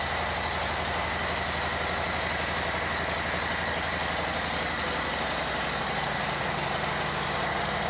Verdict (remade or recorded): recorded